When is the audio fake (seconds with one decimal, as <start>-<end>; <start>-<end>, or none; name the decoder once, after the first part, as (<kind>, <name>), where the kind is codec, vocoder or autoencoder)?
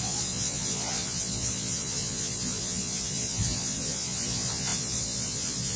0.0-5.8 (vocoder, Vocos)